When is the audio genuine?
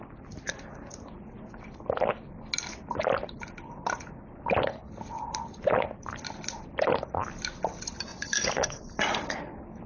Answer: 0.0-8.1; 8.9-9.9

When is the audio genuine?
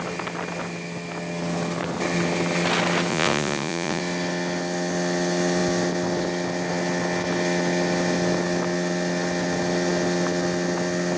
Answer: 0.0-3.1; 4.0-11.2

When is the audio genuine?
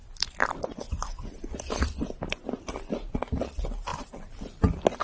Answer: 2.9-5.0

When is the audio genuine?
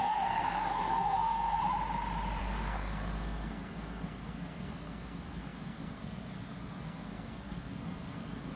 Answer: 1.6-2.4